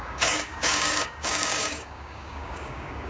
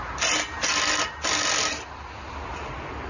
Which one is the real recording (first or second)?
second